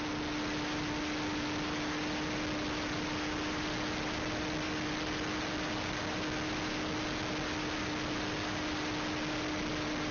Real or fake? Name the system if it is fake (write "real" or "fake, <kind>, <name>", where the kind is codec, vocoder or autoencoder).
real